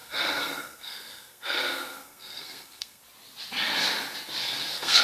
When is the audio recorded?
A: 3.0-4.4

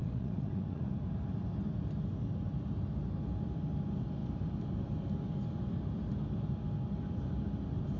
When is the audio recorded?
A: 0.9-8.0

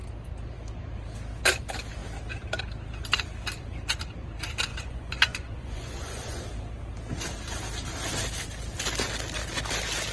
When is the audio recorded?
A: 0.0-4.7; 6.4-10.1

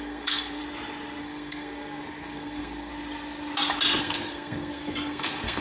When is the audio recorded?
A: 0.6-1.2; 2.9-4.0

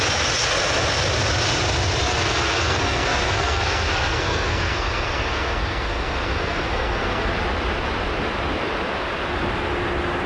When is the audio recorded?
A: 0.0-2.1; 7.3-10.3

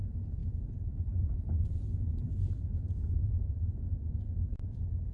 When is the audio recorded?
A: none

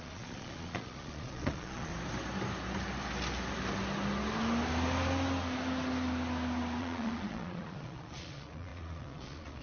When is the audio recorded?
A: 1.9-6.8

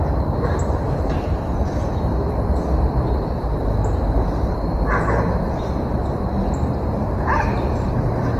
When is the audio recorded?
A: none